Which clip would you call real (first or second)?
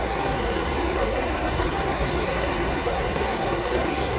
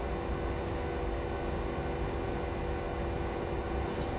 second